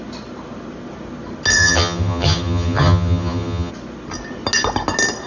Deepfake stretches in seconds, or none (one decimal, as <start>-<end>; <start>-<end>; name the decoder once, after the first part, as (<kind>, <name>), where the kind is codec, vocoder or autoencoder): 1.6-3.7 (vocoder, HiFi-GAN)